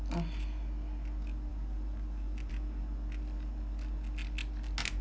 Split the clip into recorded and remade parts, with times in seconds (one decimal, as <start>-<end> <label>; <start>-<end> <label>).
0.0-1.5 recorded; 1.5-2.5 remade; 2.5-5.0 recorded